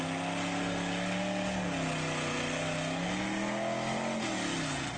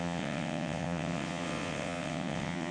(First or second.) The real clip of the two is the first